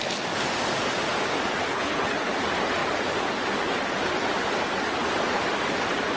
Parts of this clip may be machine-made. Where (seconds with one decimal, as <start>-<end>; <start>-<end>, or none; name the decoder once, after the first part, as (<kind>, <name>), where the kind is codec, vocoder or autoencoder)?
1.7-2.3 (codec, HILCodec)